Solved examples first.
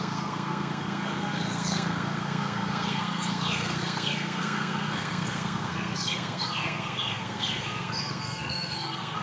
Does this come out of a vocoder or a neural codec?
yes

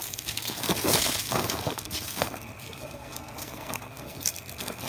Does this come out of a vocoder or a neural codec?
yes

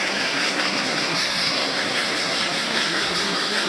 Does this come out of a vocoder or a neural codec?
yes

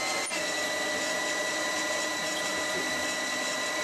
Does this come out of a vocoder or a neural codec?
no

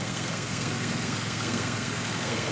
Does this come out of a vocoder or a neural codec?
yes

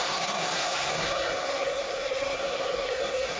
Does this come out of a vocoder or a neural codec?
yes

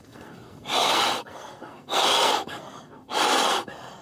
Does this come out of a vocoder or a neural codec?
yes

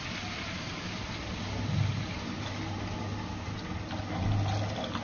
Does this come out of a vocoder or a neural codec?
no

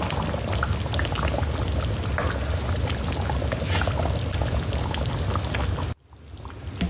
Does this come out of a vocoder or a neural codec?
no